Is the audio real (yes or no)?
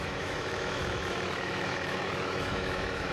no